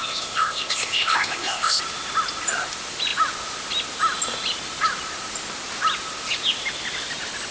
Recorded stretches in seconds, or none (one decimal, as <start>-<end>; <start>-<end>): 1.8-7.5